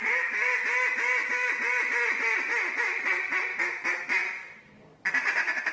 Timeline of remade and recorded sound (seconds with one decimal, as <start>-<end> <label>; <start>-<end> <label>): 0.0-5.7 recorded